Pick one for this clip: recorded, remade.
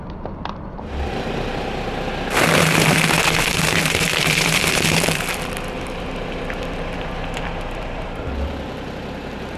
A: remade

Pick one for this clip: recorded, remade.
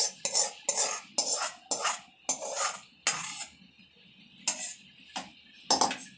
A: recorded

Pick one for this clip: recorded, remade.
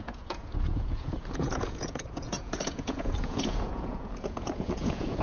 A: remade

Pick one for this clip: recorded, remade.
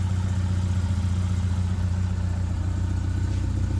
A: recorded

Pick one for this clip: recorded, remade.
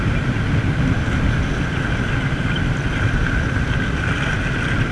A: recorded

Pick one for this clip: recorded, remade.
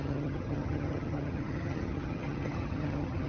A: remade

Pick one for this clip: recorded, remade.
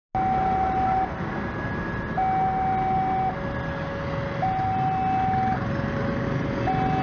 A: recorded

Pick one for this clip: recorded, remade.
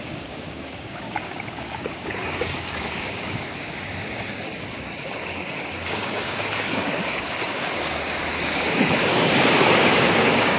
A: remade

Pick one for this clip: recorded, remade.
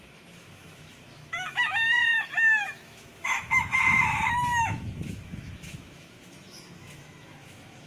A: remade